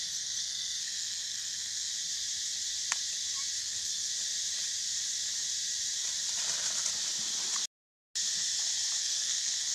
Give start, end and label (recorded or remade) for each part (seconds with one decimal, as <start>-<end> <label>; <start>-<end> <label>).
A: 0.0-1.9 remade; 1.9-3.6 recorded; 3.6-4.1 remade; 4.1-9.0 recorded; 9.0-9.7 remade